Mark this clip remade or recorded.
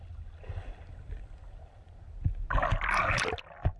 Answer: recorded